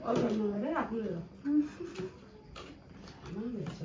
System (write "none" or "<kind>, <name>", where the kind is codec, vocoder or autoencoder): none